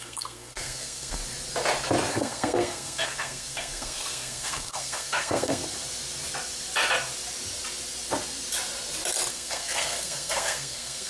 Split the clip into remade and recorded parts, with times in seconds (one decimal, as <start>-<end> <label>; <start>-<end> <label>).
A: 0.0-1.2 remade; 1.2-2.1 recorded; 2.1-5.6 remade; 5.6-9.3 recorded; 9.3-11.1 remade